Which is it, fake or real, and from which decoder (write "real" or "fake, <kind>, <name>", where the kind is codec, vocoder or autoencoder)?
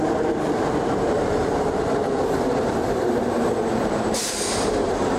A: fake, vocoder, BigVGAN v2